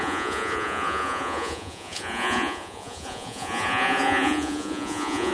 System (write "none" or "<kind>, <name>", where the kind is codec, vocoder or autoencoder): vocoder, Vocos